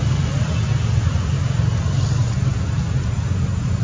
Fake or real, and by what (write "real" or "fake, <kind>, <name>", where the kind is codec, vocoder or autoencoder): real